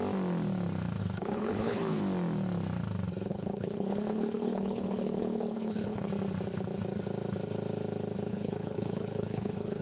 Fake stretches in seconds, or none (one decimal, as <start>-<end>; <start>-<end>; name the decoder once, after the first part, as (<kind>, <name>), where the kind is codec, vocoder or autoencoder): 1.0-2.0 (codec, HILCodec); 3.3-6.1; 8.3-9.8